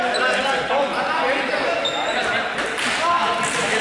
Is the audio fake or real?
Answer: real